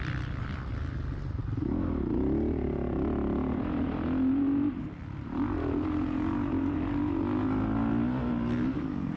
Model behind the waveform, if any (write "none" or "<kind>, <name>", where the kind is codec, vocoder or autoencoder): none